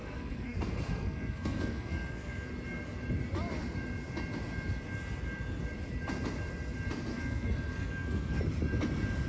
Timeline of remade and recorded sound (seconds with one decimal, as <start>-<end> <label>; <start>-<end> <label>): 0.0-2.5 remade; 2.5-7.1 recorded; 7.1-8.4 remade; 8.4-9.3 recorded